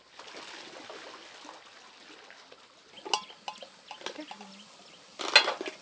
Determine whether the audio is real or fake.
real